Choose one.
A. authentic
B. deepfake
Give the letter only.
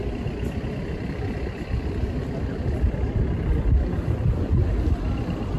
A